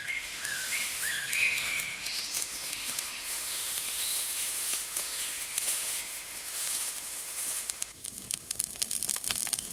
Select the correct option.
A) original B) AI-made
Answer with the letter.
B